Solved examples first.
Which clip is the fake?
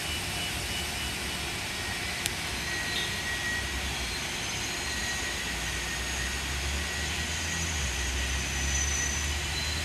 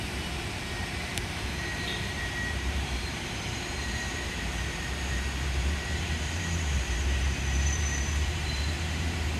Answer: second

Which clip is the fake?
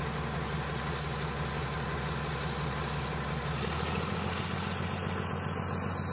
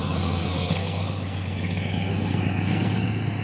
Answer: second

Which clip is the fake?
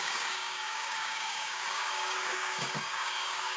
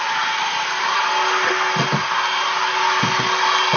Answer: first